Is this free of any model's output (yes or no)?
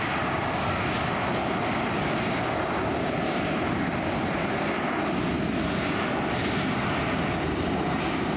yes